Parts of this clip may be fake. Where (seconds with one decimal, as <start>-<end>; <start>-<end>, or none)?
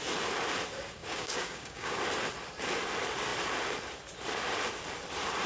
1.0-2.0